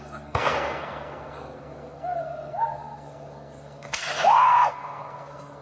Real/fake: fake